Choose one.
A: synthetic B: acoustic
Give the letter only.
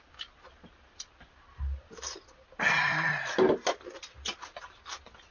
B